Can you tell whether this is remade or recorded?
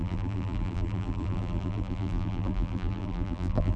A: remade